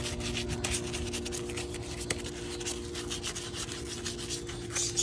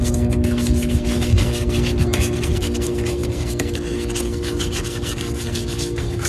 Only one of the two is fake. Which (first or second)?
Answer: second